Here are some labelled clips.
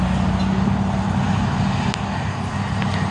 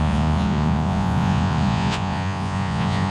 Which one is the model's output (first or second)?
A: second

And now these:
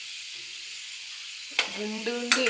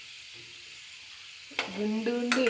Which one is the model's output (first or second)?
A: first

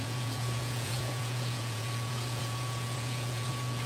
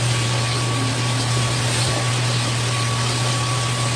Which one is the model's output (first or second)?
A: first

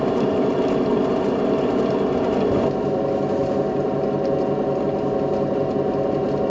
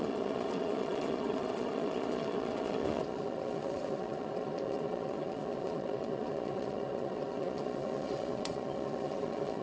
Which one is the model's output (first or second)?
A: second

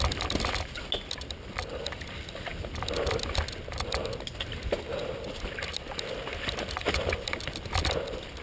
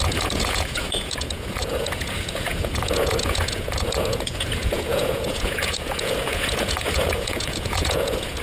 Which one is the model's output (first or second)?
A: second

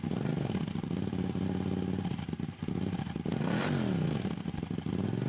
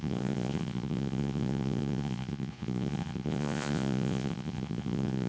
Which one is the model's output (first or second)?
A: second